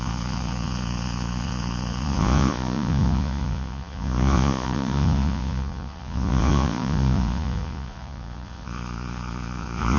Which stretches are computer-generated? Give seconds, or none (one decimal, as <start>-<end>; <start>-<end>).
0.0-10.0

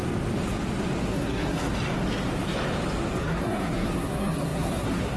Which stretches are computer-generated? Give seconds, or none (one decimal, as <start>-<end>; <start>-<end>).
1.1-1.7; 3.2-5.2

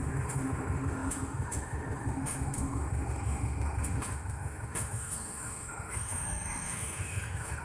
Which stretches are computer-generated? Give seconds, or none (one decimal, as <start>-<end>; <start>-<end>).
0.0-7.6